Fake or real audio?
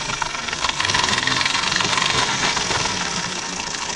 fake